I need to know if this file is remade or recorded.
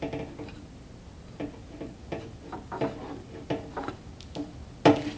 recorded